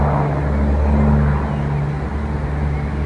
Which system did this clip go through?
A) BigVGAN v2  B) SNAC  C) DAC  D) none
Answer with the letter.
D